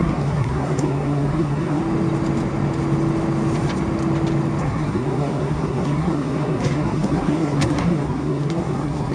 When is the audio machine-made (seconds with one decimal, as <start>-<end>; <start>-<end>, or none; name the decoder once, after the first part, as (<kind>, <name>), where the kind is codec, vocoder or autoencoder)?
0.0-1.8 (codec, SNAC); 4.6-9.1